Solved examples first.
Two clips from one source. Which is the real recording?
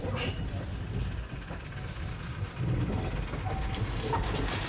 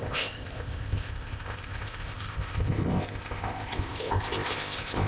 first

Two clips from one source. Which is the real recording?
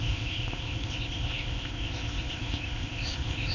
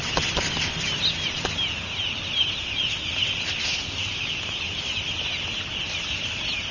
second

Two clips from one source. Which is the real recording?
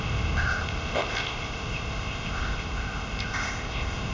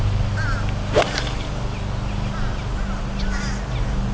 second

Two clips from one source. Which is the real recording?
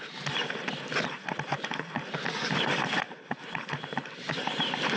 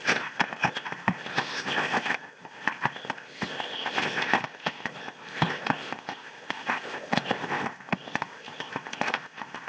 first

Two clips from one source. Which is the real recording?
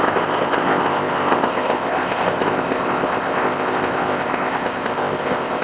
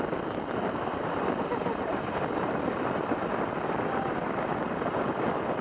second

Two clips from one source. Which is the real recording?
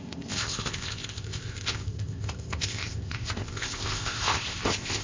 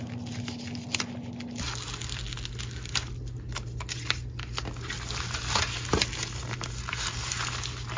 second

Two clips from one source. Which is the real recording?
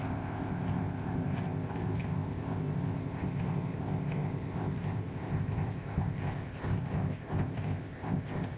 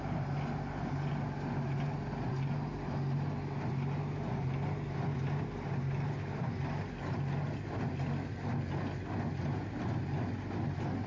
second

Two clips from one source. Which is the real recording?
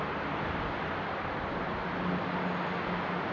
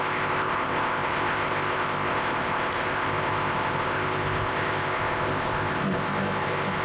first